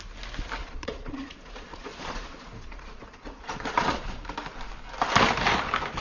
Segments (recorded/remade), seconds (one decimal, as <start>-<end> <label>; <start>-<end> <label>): 0.0-0.6 recorded; 0.6-4.2 remade; 4.2-6.0 recorded